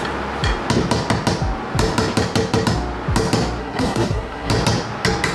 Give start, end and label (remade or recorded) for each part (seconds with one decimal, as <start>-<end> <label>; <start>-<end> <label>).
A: 0.0-3.6 recorded; 3.6-4.5 remade; 4.5-5.3 recorded